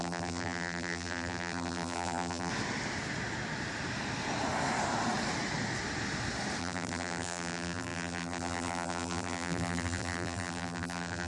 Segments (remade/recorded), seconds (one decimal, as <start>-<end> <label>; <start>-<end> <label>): 0.0-2.5 remade; 2.5-6.6 recorded; 6.6-11.3 remade